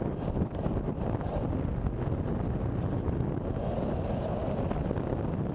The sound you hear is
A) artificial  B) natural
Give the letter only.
B